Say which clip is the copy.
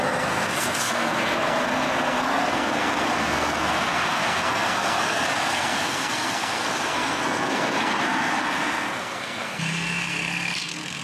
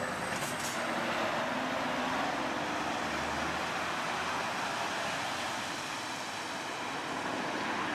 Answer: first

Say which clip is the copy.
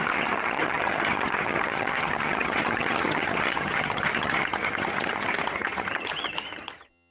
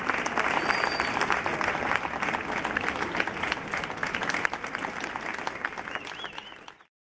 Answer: first